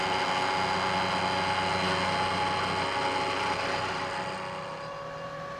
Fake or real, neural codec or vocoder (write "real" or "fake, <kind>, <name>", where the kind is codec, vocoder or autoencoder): real